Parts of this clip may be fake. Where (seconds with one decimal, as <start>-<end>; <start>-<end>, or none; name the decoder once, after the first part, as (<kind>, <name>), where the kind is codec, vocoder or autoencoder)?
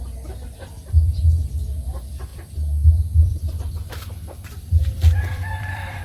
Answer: 2.3-6.0 (vocoder, BigVGAN v2)